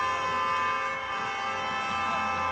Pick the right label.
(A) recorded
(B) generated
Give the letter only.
A